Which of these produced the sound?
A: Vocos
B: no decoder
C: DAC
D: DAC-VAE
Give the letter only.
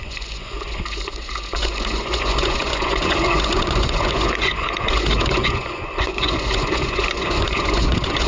A